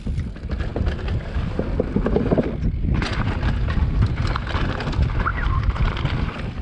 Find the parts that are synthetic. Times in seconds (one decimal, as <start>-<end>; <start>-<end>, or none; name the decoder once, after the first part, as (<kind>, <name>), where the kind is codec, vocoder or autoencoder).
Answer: 5.3-6.0 (vocoder, BigVGAN v2)